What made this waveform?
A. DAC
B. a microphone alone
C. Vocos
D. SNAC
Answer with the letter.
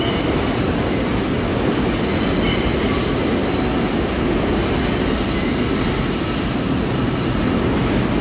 B